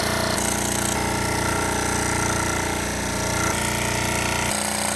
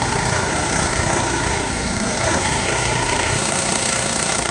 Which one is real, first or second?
first